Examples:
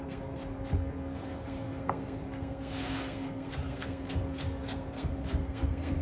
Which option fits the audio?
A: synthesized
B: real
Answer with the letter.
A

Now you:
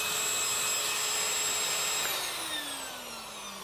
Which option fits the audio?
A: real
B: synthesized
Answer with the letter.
A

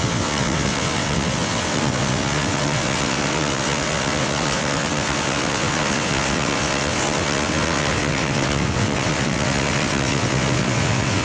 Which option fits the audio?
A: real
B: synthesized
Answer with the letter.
B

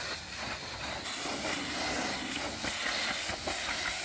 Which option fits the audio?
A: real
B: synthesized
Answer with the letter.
A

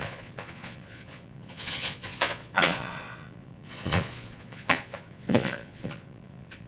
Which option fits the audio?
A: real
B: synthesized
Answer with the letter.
B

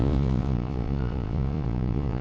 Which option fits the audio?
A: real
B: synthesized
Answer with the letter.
B